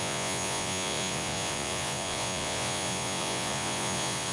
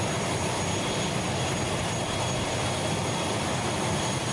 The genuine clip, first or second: second